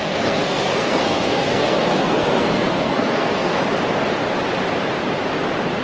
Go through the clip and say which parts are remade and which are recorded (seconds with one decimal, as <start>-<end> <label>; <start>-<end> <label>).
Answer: 0.0-3.6 remade; 3.6-5.8 recorded